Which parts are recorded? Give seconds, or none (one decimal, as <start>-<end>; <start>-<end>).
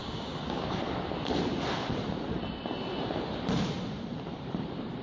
0.8-5.0